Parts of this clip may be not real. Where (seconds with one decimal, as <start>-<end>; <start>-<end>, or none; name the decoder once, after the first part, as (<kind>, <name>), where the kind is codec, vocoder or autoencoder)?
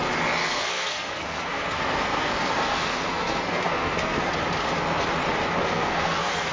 0.4-4.3 (codec, SNAC); 5.6-6.5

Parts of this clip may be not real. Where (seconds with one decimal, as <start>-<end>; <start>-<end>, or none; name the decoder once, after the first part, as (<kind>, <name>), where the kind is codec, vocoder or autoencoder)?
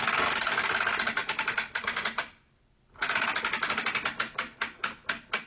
none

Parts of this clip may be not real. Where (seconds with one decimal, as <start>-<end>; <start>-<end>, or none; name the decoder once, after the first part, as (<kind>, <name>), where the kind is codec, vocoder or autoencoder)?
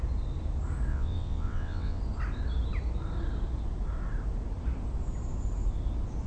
0.9-2.0 (vocoder, WaveNeXt)